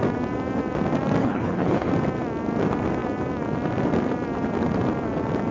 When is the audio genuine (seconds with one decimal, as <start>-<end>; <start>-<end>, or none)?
0.0-1.2; 1.9-5.5